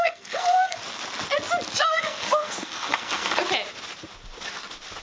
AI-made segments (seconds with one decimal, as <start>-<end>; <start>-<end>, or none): 0.0-0.8; 1.8-3.4